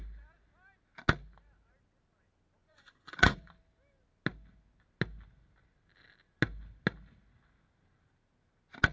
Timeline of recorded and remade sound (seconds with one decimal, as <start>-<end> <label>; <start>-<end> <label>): 0.0-2.6 recorded; 2.6-3.5 remade; 3.5-8.9 recorded